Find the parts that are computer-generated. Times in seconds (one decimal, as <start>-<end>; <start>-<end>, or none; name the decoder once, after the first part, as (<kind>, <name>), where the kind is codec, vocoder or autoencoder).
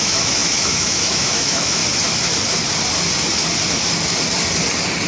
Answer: 0.0-1.8 (autoencoder, DAC-VAE)